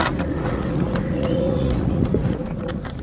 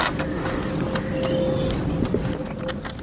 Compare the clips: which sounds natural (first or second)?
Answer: second